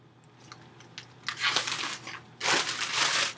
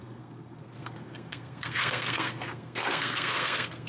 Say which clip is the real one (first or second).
first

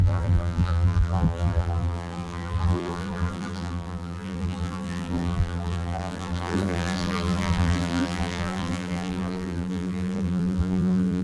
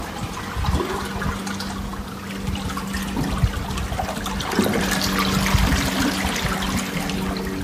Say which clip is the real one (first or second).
second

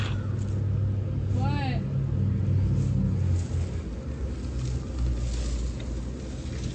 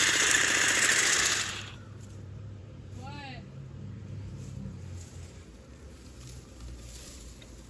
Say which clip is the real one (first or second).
first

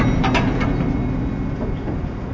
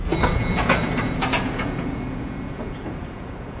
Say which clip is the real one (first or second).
first